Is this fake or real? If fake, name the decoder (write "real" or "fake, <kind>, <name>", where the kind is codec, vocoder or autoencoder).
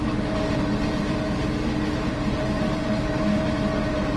fake, vocoder, BigVGAN v2